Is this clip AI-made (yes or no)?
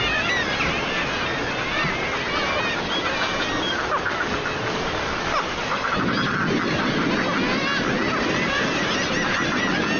no